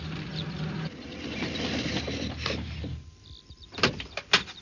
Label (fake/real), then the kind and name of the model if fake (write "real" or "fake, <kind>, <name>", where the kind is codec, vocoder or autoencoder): real